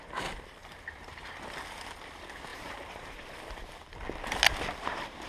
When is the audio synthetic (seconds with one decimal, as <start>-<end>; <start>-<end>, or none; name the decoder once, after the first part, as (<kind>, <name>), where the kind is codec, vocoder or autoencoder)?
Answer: 0.6-1.1 (vocoder, BigVGAN v2); 2.5-3.7